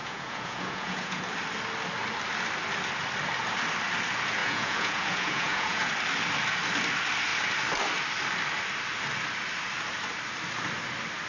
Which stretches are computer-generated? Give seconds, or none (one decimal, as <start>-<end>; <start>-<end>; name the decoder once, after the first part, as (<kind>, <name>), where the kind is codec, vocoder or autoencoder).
0.0-1.2 (vocoder, Vocos); 4.4-5.9